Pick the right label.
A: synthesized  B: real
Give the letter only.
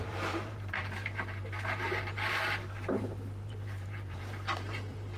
A